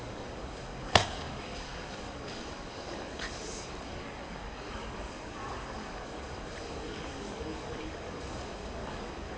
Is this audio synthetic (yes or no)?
yes